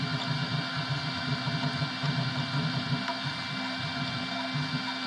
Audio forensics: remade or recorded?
recorded